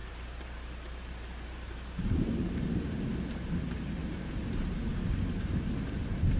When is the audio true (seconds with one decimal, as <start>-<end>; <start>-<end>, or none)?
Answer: 3.1-4.0; 5.5-6.4

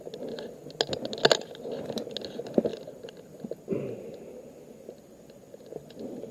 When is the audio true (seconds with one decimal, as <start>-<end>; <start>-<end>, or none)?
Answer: 0.0-6.3

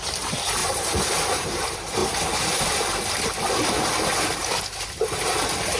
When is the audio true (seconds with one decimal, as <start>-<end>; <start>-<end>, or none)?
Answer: 0.0-0.6; 1.6-5.8

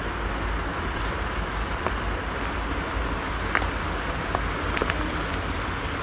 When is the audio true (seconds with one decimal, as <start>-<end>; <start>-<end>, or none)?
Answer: 0.0-0.7; 3.3-6.0

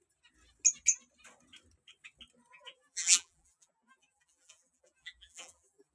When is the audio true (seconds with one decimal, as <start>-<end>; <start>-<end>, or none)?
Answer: 0.0-2.5

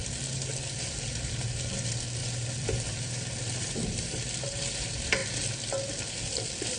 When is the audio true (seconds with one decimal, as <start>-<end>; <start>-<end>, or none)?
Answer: 0.0-2.2; 4.6-6.8

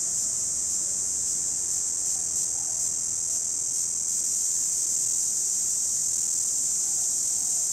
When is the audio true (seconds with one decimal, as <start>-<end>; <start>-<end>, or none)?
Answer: 0.6-5.2; 6.0-6.5